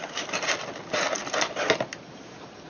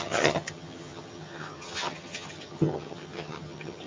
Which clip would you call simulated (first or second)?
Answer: second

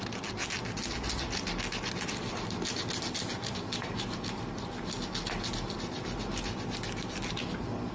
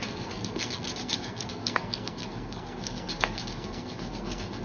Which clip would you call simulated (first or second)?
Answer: second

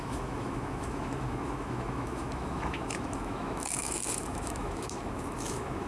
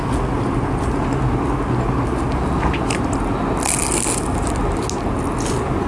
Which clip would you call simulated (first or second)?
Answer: first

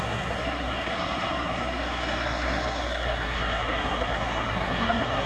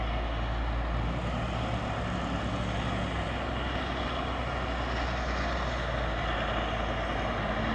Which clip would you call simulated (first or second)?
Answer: first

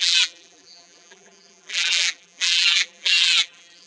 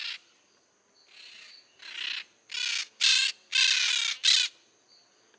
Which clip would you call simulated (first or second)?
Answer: first